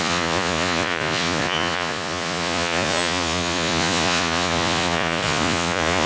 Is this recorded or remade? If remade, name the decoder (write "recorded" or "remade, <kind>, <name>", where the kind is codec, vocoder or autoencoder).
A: remade, vocoder, Vocos